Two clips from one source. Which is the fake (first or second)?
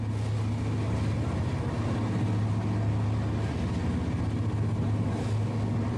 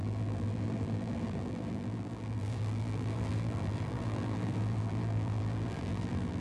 second